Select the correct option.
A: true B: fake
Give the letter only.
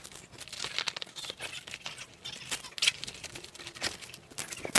A